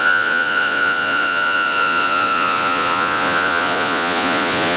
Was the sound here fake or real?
fake